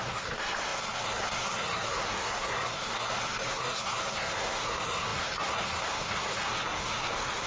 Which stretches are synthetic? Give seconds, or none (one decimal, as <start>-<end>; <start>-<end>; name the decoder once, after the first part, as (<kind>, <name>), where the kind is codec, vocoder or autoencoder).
0.0-7.5 (codec, SNAC)